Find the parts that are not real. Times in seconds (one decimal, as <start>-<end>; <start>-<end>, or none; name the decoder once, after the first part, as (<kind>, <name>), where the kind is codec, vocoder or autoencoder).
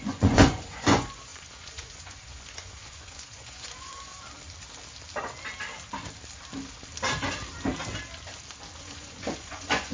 0.0-4.1 (vocoder, Vocos); 8.8-9.9